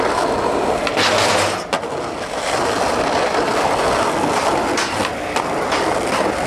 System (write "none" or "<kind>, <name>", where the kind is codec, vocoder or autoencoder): none